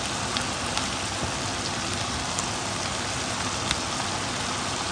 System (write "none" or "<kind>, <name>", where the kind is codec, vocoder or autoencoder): none